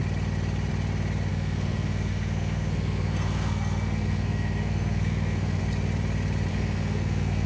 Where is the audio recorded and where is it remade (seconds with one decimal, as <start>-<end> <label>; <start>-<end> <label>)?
0.0-1.3 recorded; 1.3-5.6 remade; 5.6-6.5 recorded; 6.5-7.5 remade